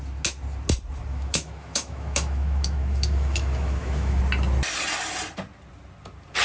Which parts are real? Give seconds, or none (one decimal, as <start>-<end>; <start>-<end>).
0.0-1.1; 4.2-6.4